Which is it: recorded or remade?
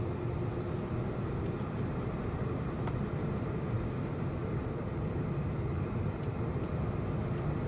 recorded